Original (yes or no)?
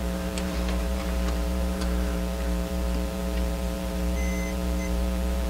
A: no